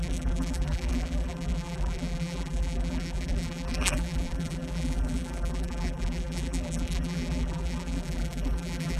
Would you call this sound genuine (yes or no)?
no